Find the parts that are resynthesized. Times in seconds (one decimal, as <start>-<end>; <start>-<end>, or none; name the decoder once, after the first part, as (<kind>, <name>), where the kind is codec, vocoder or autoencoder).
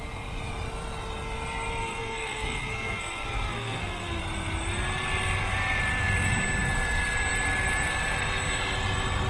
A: 1.8-4.2 (codec, SNAC)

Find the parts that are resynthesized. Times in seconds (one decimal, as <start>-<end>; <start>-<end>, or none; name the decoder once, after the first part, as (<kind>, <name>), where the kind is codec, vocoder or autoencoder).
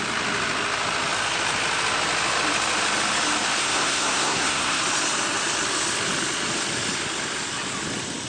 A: 3.6-4.8 (codec, SNAC)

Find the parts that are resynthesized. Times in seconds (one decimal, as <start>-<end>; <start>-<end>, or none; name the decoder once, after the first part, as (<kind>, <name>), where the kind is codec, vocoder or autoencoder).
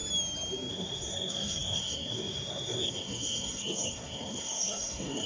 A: 0.7-5.3 (codec, SNAC)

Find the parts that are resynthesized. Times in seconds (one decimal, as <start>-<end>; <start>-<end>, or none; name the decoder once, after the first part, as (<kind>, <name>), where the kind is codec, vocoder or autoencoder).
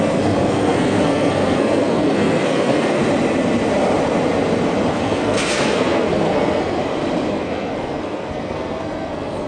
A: 0.0-3.0 (codec, SNAC); 4.9-6.8; 7.3-9.5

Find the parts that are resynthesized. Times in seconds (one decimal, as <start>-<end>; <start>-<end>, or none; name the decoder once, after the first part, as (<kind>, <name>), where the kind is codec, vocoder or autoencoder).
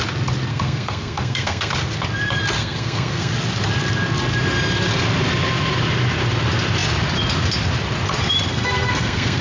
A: 0.5-1.7 (codec, SNAC); 2.6-3.3; 8.5-9.4